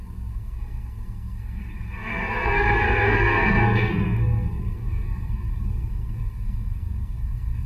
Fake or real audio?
fake